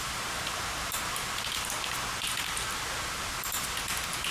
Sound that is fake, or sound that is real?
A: real